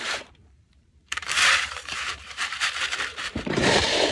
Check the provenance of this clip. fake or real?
fake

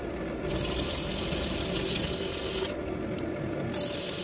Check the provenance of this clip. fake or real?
real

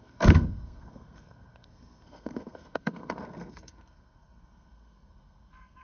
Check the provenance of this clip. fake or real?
fake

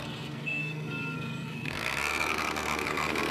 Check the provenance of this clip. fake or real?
fake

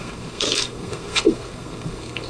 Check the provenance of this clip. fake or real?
fake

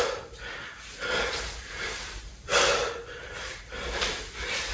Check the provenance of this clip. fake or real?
real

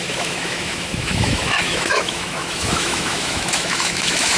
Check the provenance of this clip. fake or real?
fake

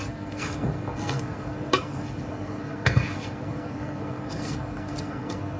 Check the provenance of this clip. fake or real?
fake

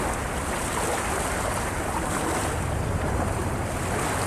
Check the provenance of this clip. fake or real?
real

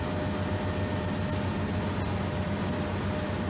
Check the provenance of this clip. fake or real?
real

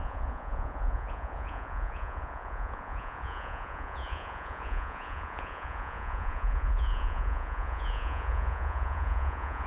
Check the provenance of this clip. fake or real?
fake